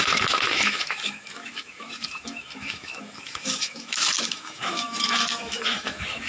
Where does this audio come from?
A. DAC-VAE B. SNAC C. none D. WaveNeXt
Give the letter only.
A